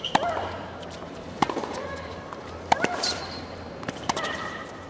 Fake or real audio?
fake